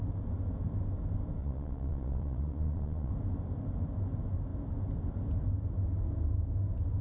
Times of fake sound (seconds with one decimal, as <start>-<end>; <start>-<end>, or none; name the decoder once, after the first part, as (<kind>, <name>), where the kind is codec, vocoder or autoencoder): 1.4-3.1 (vocoder, Vocos)